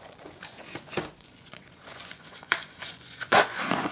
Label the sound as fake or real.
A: fake